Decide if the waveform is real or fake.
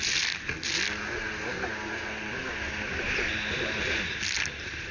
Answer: real